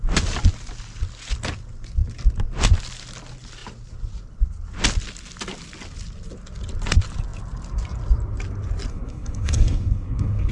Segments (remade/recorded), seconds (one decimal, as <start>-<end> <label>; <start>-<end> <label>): 0.0-8.9 recorded; 8.9-10.5 remade